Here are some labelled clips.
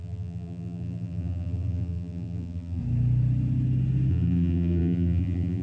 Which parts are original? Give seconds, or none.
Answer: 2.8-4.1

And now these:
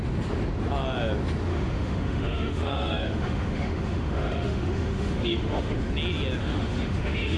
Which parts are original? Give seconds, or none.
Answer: 0.0-1.5; 5.9-6.4